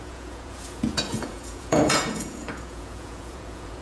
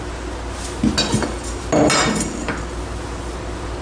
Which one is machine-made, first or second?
first